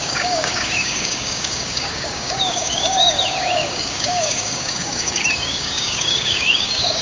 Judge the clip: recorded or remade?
remade